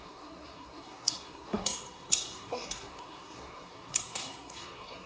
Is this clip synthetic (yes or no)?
yes